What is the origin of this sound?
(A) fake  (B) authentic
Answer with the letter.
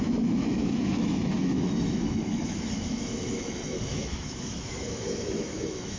A